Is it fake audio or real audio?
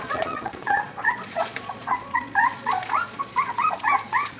fake